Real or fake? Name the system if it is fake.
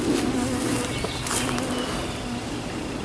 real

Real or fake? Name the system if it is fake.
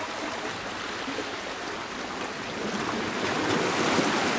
real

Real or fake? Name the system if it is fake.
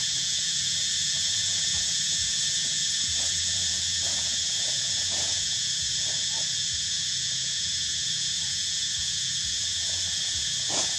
fake, vocoder, Vocos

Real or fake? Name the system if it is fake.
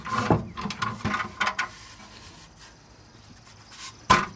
real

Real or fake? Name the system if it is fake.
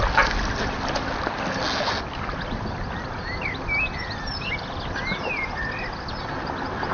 real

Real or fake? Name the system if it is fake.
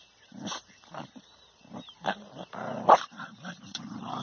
fake, vocoder, BigVGAN v2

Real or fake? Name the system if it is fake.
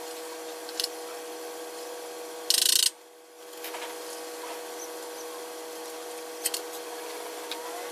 real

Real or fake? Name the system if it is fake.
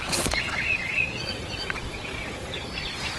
fake, vocoder, Vocos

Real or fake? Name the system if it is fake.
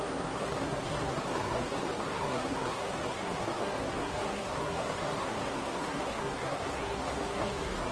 fake, codec, SNAC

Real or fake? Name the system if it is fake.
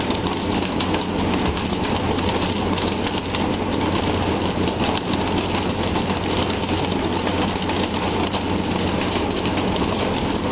real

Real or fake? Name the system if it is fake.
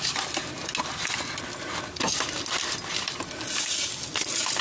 real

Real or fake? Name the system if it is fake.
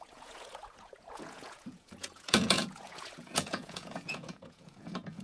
fake, vocoder, Vocos